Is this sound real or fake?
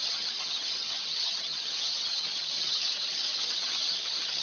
fake